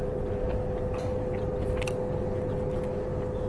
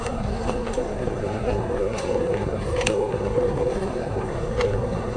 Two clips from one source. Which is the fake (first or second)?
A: second